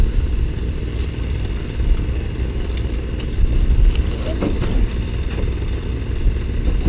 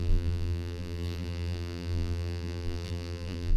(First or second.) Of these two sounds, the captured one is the first